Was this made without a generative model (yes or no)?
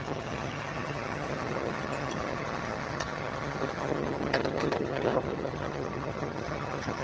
no